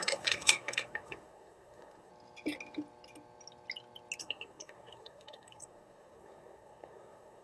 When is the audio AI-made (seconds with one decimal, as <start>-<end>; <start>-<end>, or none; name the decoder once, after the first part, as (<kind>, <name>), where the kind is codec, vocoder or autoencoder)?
0.0-2.1 (codec, SNAC); 4.2-7.4